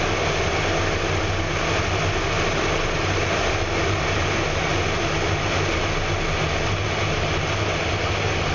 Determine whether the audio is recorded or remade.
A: recorded